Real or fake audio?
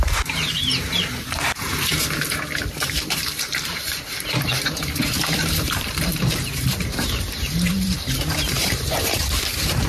fake